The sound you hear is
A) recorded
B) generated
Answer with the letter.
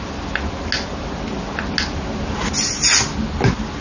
A